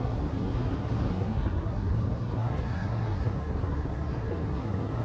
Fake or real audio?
fake